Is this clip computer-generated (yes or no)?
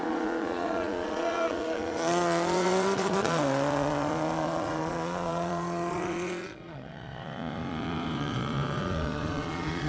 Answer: yes